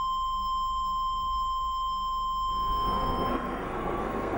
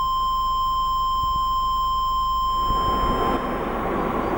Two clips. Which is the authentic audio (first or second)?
second